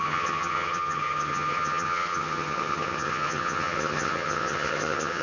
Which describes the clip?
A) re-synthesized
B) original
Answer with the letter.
A